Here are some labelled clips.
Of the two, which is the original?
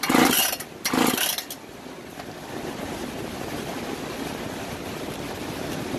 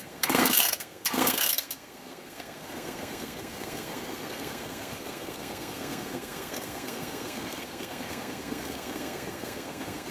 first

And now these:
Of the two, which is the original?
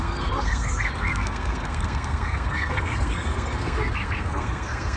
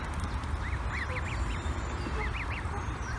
second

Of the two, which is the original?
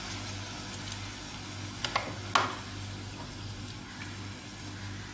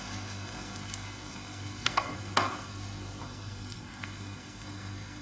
first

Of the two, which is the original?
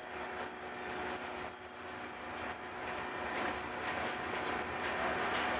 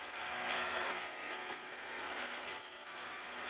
first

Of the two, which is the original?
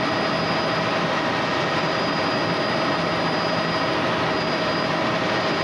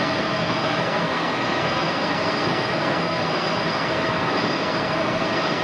first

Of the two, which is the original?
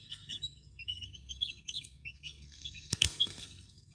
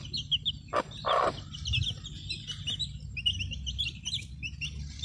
second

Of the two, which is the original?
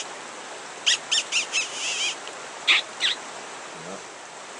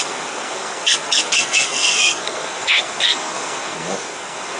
first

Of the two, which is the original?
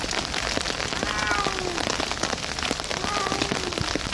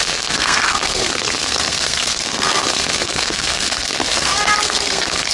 first